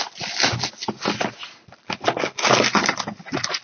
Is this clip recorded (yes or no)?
yes